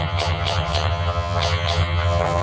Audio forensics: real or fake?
fake